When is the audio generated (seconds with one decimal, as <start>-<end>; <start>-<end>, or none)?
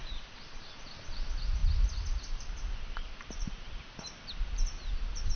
0.0-0.8; 1.6-4.0